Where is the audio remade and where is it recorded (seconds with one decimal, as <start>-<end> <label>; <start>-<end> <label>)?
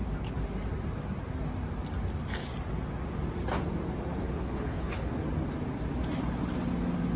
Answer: 0.0-4.2 recorded; 4.2-5.1 remade; 5.1-7.2 recorded